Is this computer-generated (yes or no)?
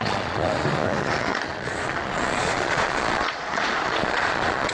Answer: yes